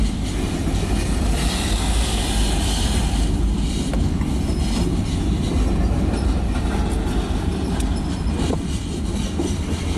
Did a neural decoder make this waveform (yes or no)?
no